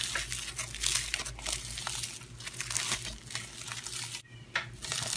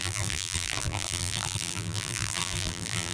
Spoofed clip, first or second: second